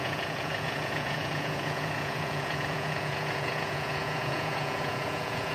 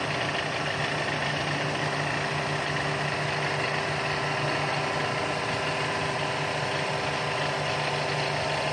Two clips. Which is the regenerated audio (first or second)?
first